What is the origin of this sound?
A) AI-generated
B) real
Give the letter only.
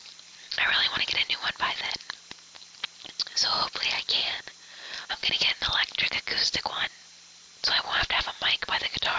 B